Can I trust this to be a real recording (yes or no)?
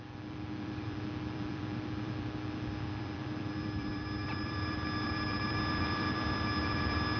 no